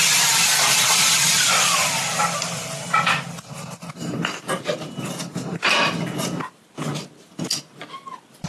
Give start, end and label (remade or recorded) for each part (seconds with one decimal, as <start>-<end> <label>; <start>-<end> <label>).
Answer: 0.0-8.5 recorded